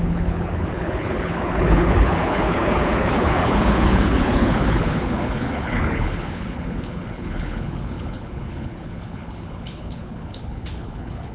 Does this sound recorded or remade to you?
remade